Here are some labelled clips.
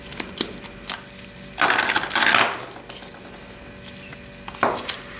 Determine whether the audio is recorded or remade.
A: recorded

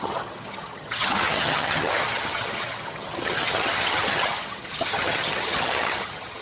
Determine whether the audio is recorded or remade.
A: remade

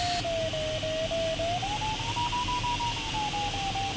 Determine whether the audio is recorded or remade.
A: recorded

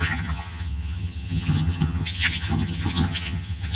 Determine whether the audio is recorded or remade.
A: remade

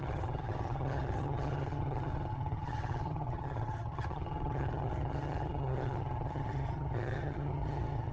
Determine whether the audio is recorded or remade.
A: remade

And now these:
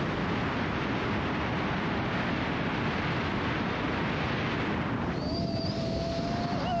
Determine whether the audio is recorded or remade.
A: recorded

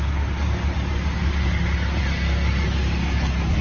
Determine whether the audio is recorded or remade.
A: recorded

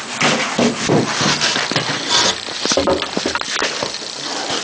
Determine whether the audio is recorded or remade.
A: recorded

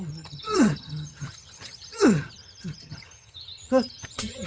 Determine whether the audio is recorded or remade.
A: remade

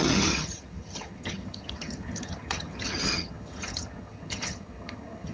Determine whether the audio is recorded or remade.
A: remade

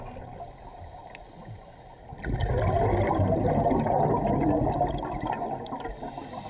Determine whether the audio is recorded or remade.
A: recorded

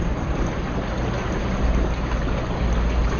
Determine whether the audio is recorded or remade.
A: recorded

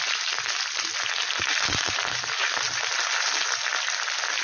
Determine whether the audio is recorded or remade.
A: recorded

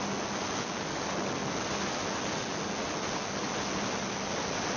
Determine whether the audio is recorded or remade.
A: recorded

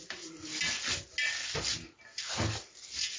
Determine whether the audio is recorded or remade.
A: recorded